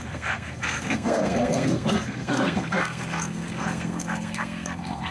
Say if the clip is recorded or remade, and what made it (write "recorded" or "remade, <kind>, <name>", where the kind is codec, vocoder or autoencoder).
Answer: remade, codec, SNAC